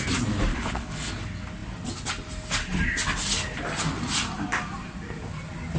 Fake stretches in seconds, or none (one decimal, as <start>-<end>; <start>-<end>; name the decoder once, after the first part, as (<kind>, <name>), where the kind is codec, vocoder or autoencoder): 0.5-1.1 (codec, HILCodec)